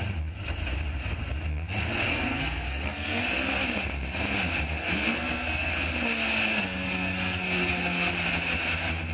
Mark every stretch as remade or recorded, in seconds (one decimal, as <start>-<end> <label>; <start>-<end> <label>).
0.0-2.1 recorded; 2.1-3.2 remade; 3.2-4.8 recorded; 4.8-5.7 remade; 5.7-6.5 recorded; 6.5-8.1 remade; 8.1-9.1 recorded